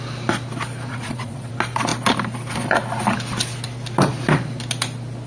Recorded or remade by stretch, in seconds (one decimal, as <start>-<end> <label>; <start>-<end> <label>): 0.0-0.9 recorded; 0.9-1.5 remade; 1.5-5.3 recorded